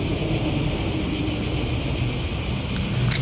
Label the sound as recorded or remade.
recorded